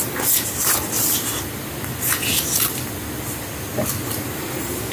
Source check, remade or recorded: recorded